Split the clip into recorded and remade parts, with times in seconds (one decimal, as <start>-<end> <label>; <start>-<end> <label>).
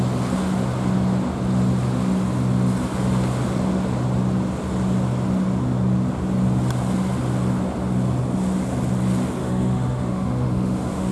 0.0-9.4 recorded; 9.4-11.1 remade